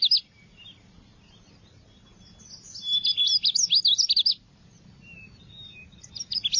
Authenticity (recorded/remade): recorded